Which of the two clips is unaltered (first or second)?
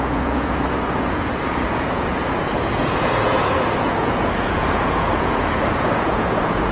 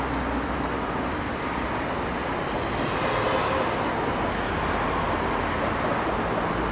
second